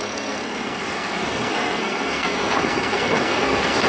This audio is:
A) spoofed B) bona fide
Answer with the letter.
A